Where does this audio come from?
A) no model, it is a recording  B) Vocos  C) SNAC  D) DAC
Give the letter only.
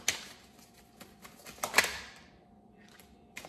A